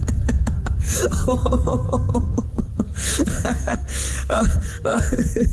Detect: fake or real fake